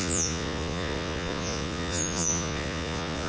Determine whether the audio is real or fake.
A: fake